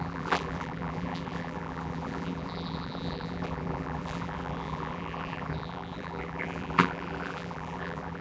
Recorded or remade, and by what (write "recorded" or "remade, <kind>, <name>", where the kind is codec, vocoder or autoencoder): remade, vocoder, BigVGAN v2